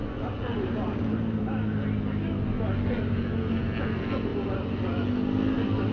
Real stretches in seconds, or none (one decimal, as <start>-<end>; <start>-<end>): 0.0-5.9